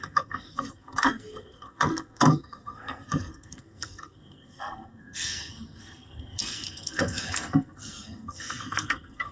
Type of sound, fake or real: fake